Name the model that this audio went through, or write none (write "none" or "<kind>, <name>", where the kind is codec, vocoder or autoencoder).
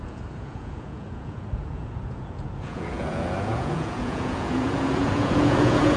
vocoder, Vocos